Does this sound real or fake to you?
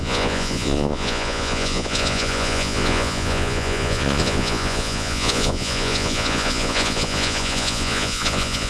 fake